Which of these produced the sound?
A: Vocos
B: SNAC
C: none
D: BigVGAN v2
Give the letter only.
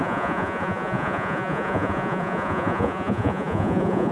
A